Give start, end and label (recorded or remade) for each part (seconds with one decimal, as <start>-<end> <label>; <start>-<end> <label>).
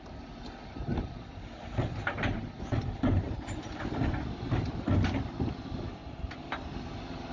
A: 0.0-0.9 recorded; 0.9-3.8 remade; 3.8-6.0 recorded; 6.0-6.5 remade; 6.5-7.3 recorded